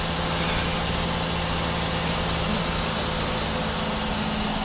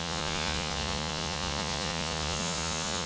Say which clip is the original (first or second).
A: first